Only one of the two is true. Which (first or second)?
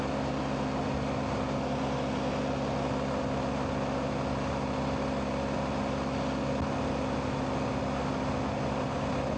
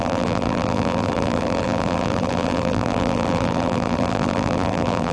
first